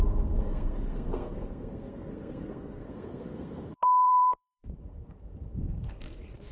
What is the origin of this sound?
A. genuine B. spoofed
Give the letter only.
B